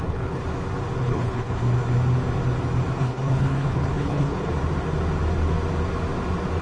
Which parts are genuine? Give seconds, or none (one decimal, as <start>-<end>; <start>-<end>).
0.4-1.0; 1.6-3.0; 4.5-6.6